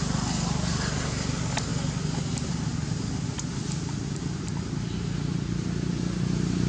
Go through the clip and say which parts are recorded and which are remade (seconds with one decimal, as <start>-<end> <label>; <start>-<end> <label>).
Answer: 0.0-6.7 recorded